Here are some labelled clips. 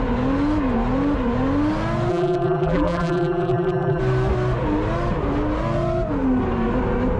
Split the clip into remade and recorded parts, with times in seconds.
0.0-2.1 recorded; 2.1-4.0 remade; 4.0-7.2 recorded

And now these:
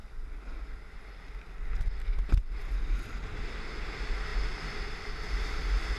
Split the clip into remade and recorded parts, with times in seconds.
0.0-6.0 recorded

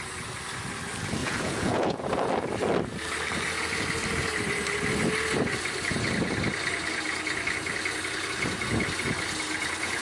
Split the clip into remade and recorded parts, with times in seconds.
0.0-1.2 recorded; 1.2-2.1 remade; 2.1-10.0 recorded

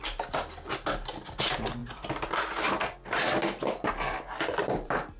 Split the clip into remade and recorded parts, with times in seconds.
0.0-5.2 recorded

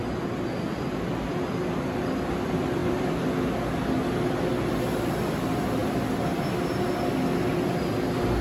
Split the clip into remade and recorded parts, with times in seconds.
0.0-2.8 recorded; 2.8-3.3 remade; 3.3-5.8 recorded; 5.8-6.3 remade; 6.3-8.4 recorded